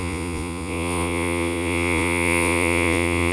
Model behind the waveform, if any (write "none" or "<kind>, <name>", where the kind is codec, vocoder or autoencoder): vocoder, Vocos